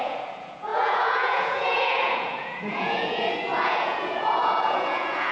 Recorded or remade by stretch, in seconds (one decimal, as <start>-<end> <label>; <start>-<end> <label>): 0.0-5.3 remade